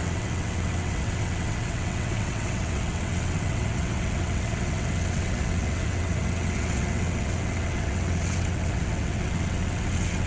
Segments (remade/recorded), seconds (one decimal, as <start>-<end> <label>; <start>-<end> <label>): 0.0-10.3 remade